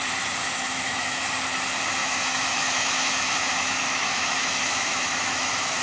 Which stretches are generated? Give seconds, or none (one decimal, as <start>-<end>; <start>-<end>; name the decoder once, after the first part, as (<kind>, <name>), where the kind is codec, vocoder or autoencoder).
0.4-1.2 (autoencoder, DAC-VAE); 2.0-5.8